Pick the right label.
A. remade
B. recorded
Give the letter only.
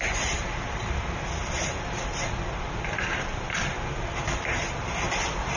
A